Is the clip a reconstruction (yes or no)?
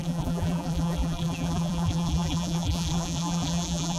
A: yes